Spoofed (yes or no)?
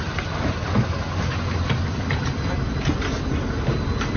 no